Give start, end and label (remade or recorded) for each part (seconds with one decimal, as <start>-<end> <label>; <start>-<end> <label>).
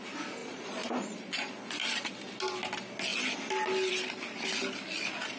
0.0-0.4 recorded; 0.4-1.5 remade; 1.5-5.4 recorded